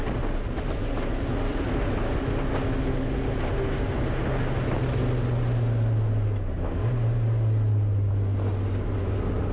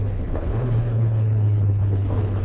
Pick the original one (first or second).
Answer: first